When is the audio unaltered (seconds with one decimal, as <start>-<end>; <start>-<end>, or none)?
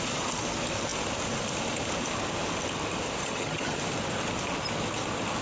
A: 0.0-3.2; 3.8-5.4